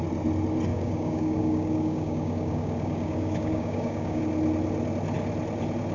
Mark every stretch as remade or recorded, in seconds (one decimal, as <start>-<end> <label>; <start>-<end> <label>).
0.0-0.7 recorded; 0.7-4.2 remade; 4.2-5.9 recorded